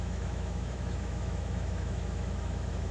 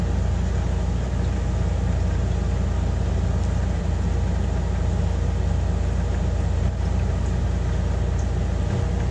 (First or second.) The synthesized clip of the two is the first